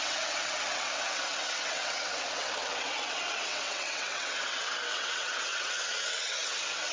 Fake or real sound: fake